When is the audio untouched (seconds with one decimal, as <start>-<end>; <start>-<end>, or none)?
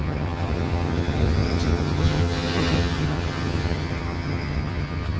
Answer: none